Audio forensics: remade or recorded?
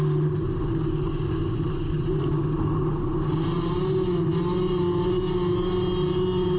recorded